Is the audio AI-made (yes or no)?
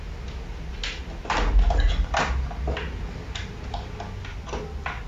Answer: no